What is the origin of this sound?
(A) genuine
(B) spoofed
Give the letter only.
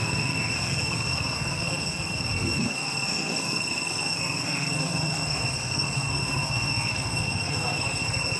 B